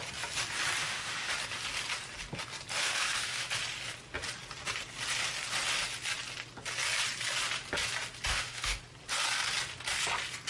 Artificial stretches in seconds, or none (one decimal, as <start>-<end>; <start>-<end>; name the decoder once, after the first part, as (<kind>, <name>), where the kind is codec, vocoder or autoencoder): 0.8-1.3 (autoencoder, DAC-VAE); 2.8-3.5; 8.3-8.8